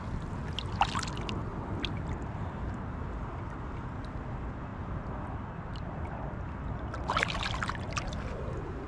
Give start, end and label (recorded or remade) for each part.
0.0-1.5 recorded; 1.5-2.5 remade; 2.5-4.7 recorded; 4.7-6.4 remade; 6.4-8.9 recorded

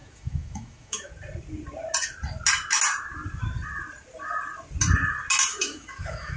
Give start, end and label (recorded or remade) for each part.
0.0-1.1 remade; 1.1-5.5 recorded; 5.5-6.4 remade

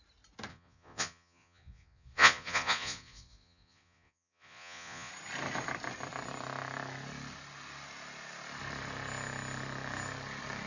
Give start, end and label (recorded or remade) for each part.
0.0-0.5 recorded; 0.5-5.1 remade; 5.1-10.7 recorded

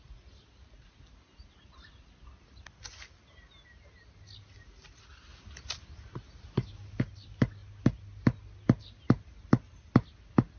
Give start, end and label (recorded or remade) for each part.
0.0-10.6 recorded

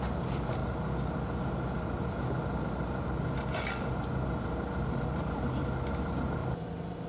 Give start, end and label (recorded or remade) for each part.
0.0-0.6 remade; 0.6-4.9 recorded; 4.9-7.1 remade

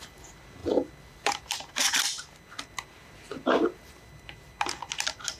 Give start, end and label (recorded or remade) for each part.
0.0-0.6 recorded; 0.6-2.4 remade; 2.4-5.4 recorded